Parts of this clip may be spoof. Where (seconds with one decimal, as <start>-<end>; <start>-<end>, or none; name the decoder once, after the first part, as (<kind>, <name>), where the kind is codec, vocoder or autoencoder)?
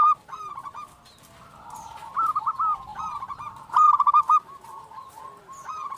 none